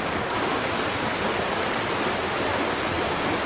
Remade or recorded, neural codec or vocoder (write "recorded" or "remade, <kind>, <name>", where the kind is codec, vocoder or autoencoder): recorded